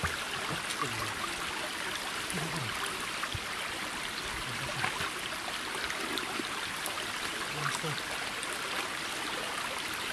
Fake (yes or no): no